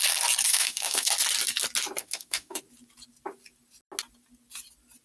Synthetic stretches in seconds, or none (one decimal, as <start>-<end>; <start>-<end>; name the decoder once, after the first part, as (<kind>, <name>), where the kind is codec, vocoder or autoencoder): 0.5-1.1 (autoencoder, DAC-VAE); 2.0-2.6